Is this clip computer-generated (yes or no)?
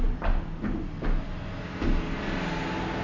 no